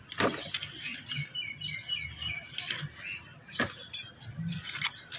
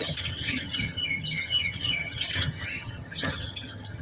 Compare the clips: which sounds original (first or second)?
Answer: first